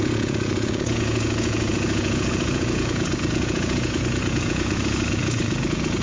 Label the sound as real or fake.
fake